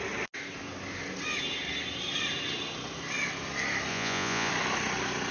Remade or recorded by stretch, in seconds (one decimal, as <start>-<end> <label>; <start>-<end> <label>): 0.0-3.9 recorded; 3.9-4.5 remade; 4.5-5.3 recorded